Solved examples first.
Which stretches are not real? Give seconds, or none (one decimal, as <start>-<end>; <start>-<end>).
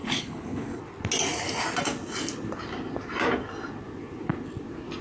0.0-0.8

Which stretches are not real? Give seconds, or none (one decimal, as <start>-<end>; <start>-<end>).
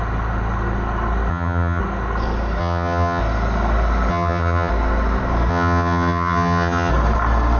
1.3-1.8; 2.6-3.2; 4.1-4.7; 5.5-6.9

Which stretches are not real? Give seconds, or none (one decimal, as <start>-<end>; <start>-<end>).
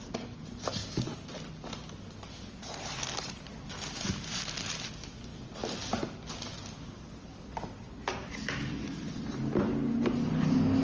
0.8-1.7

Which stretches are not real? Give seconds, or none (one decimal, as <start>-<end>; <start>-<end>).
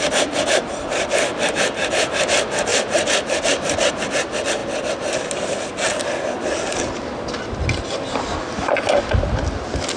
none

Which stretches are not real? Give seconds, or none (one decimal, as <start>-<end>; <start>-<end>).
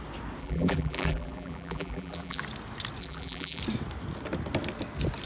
0.4-2.4; 3.0-3.6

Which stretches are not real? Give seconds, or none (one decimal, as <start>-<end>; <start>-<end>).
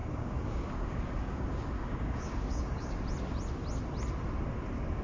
0.0-3.0